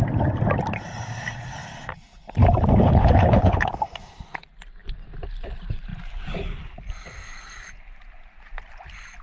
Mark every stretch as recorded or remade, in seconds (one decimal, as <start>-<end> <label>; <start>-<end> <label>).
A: 0.0-2.8 recorded; 2.8-3.7 remade; 3.7-9.2 recorded